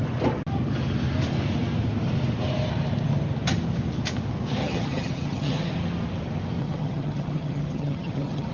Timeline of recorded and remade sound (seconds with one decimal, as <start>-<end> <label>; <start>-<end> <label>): 0.0-4.6 recorded; 4.6-5.7 remade; 5.7-6.6 recorded; 6.6-8.5 remade

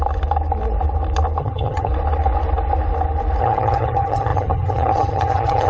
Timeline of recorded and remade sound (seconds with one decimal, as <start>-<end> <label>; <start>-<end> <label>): 0.0-1.4 recorded; 1.4-1.9 remade; 1.9-3.4 recorded; 3.4-5.7 remade

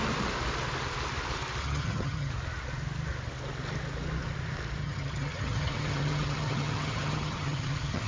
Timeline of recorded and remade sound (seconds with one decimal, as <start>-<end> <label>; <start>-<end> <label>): 0.0-1.6 recorded; 1.6-2.3 remade; 2.3-4.8 recorded; 4.8-8.1 remade